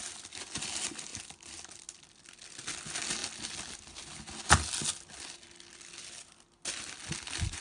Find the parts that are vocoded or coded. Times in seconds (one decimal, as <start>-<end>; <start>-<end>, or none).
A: none